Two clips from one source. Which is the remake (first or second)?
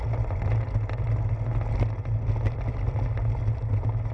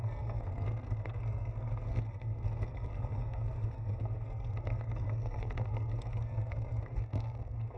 second